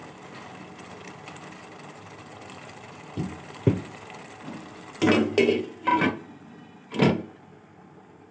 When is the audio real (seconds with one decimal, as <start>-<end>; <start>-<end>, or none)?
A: 0.0-8.3